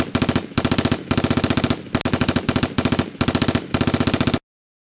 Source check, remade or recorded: recorded